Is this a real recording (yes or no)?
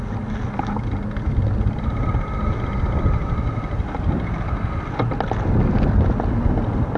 yes